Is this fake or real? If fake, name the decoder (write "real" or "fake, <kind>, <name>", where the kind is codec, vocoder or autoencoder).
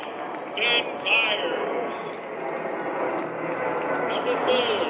real